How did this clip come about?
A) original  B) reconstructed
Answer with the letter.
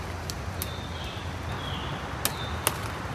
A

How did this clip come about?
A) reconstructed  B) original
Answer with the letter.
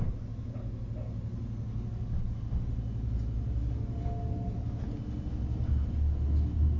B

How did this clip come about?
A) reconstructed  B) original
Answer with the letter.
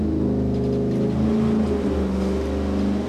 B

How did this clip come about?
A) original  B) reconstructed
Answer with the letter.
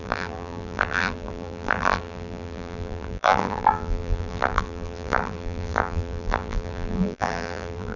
B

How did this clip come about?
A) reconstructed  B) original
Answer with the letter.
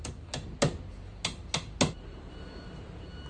B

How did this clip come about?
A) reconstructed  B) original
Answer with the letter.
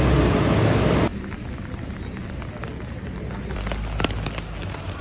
B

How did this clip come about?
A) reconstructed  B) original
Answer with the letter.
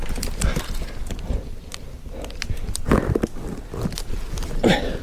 B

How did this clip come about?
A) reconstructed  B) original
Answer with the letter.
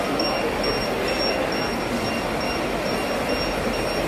B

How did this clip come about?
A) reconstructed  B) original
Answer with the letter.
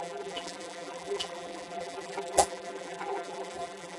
A